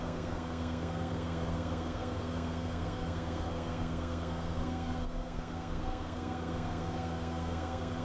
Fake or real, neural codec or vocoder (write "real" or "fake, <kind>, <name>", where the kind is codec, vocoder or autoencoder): fake, codec, SNAC